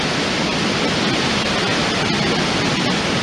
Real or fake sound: real